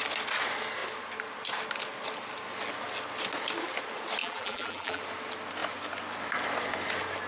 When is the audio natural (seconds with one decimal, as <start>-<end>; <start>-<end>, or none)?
0.0-4.2; 5.0-7.3